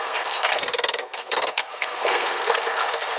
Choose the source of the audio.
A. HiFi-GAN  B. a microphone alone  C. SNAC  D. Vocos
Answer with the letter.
C